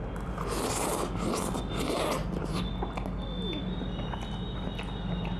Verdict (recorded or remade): recorded